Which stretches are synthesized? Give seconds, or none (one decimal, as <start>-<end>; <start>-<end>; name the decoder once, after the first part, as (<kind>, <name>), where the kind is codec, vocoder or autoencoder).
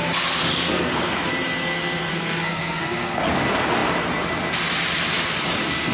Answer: 0.5-1.3 (codec, SNAC); 2.1-3.3